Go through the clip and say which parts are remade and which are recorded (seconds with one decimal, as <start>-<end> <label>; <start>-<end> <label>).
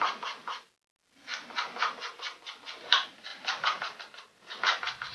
0.0-5.1 recorded